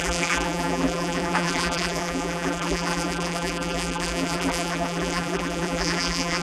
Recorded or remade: remade